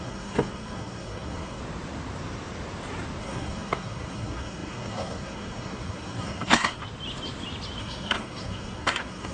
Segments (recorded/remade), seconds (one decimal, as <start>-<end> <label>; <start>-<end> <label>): 0.0-1.6 remade; 1.6-3.2 recorded; 3.2-6.8 remade; 6.8-7.8 recorded; 7.8-9.3 remade